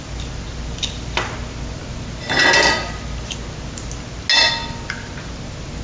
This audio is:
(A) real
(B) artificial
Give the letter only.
A